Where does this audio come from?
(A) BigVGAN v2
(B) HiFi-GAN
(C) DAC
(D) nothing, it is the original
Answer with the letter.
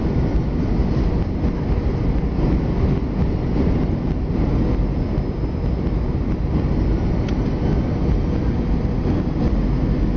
D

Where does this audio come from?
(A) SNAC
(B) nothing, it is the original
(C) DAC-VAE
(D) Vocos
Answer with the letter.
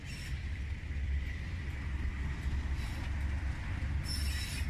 B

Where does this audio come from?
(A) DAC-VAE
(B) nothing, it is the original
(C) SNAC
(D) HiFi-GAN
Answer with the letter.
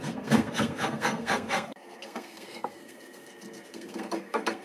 C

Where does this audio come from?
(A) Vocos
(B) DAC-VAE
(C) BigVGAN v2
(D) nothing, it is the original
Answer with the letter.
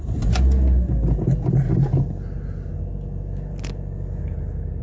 D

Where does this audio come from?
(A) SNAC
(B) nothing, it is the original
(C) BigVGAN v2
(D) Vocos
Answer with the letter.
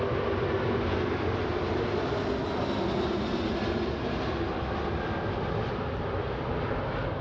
B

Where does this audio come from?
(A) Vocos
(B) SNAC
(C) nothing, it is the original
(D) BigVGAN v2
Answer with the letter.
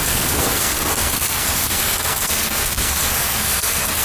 B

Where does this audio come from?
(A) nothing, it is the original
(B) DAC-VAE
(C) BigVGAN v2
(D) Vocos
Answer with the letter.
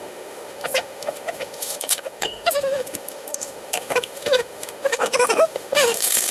B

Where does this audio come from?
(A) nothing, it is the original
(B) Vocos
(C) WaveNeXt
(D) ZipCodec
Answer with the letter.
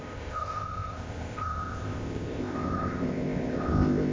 D